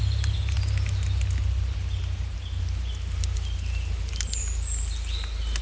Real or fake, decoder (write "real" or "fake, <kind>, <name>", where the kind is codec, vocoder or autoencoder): real